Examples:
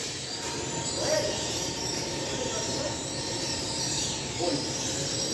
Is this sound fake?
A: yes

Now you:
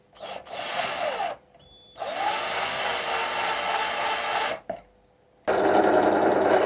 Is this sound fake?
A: no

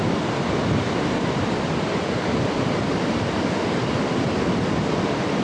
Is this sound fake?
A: no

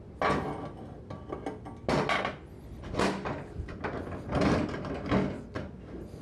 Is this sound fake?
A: no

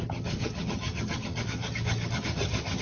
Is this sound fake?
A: yes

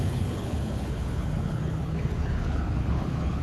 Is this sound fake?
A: yes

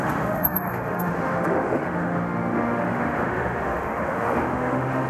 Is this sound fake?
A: yes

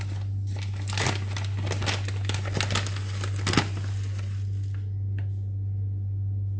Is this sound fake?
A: no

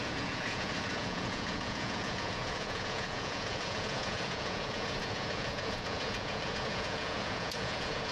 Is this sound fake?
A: yes